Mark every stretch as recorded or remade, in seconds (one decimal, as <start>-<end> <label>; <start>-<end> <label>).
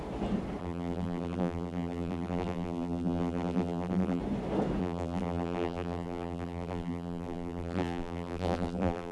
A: 0.0-0.6 recorded; 0.6-4.2 remade; 4.2-4.8 recorded; 4.8-9.1 remade